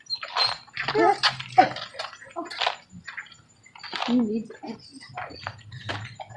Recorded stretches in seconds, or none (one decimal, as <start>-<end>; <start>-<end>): 0.0-1.9; 2.5-4.9; 5.9-6.4